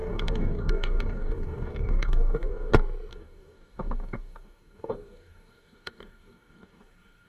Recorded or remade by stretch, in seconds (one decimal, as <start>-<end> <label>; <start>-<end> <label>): 0.0-2.7 remade; 2.7-3.1 recorded; 3.1-7.3 remade